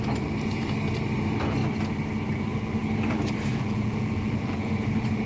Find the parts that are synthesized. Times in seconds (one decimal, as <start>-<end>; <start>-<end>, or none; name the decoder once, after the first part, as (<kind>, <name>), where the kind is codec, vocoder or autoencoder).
3.5-4.7 (vocoder, Vocos)